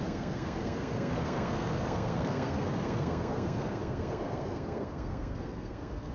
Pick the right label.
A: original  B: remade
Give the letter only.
B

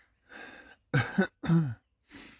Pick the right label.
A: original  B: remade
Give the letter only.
A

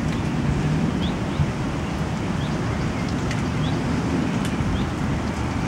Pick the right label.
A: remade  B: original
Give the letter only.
B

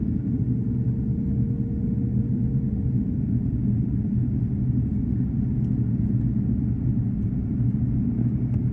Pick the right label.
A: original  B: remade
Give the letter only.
A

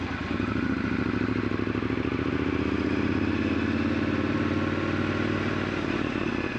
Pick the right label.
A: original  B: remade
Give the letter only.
A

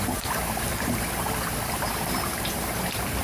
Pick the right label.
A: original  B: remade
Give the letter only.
B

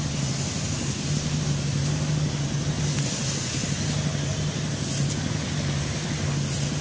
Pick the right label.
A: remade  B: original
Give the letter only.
B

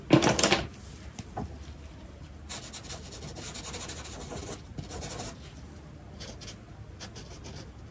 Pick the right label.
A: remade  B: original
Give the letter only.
B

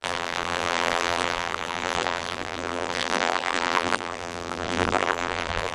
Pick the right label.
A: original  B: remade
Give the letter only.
B